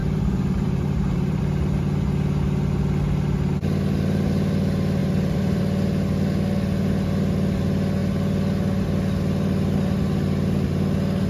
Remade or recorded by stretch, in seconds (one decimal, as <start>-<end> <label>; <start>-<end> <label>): 0.0-1.4 remade; 1.4-5.0 recorded; 5.0-5.6 remade; 5.6-11.3 recorded